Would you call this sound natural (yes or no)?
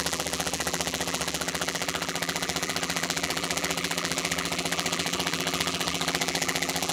no